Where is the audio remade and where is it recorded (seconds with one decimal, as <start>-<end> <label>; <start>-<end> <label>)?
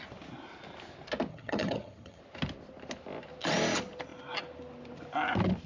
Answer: 0.0-1.3 recorded; 1.3-2.2 remade; 2.2-5.7 recorded